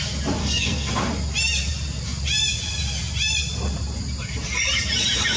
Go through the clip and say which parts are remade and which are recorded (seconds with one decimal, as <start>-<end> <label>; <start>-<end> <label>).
0.0-0.4 recorded; 0.4-0.9 remade; 0.9-5.4 recorded